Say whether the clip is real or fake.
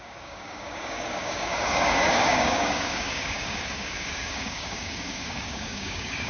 fake